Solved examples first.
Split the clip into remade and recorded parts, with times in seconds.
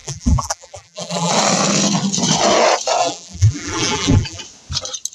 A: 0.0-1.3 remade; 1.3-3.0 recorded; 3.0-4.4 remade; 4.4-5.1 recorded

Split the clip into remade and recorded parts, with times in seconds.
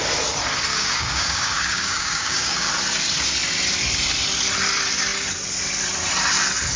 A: 0.0-0.7 recorded; 0.7-2.7 remade; 2.7-6.8 recorded